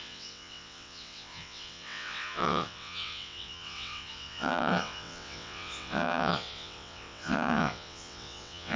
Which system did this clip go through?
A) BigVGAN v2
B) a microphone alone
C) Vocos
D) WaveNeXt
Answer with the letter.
D